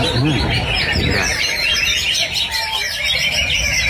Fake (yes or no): no